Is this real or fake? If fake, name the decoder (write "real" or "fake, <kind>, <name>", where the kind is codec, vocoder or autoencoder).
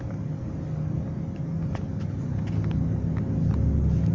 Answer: real